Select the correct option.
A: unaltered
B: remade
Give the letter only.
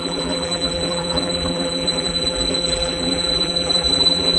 B